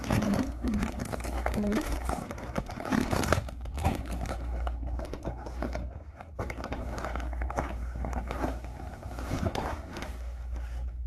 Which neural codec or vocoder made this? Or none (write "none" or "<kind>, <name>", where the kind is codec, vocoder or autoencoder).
codec, SNAC